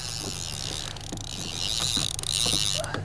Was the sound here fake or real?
real